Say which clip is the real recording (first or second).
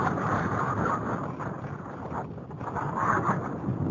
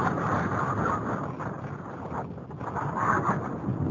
second